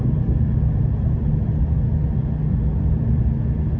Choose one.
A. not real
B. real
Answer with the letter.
B